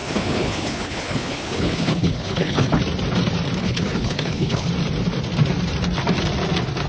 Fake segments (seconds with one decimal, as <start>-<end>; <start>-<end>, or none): 0.0-2.8; 3.6-4.7